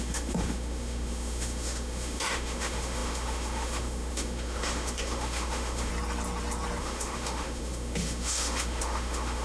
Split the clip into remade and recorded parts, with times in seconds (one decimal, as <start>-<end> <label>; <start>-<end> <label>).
0.0-5.9 remade; 5.9-6.8 recorded; 6.8-9.4 remade